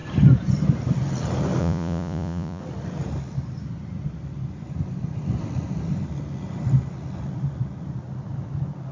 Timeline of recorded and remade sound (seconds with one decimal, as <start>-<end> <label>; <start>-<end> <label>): 0.0-1.6 recorded; 1.6-2.6 remade; 2.6-8.9 recorded